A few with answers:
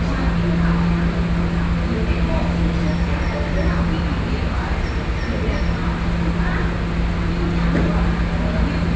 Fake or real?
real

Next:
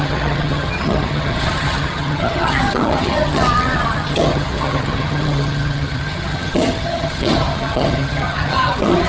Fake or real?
fake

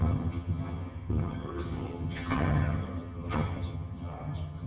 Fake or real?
fake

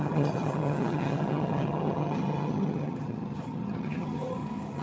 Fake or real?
fake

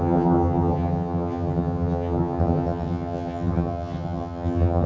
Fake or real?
fake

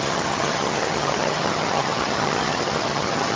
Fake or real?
fake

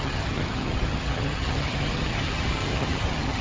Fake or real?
fake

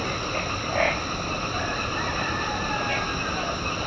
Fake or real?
real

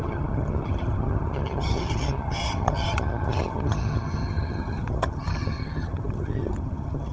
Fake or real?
fake